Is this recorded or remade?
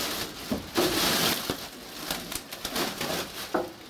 recorded